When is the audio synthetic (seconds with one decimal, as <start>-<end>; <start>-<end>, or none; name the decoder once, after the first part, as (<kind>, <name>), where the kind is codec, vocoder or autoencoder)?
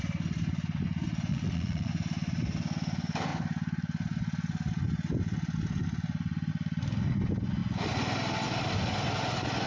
1.3-1.9 (vocoder, Vocos)